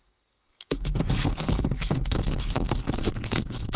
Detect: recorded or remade remade